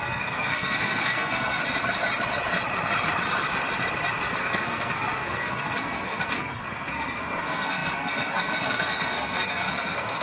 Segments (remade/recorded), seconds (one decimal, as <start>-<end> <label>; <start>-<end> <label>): 0.0-1.6 remade; 1.6-4.4 recorded; 4.4-10.2 remade